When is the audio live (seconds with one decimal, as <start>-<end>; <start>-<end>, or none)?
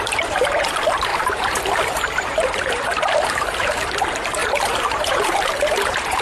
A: none